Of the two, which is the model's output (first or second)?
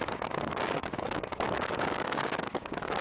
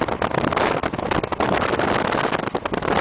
first